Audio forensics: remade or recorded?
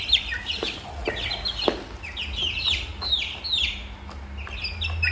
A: recorded